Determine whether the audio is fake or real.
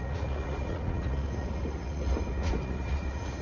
fake